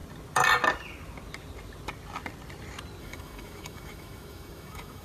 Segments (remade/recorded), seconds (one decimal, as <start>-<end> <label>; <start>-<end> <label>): 0.0-3.0 recorded; 3.0-5.0 remade